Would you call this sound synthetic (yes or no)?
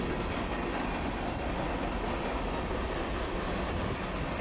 no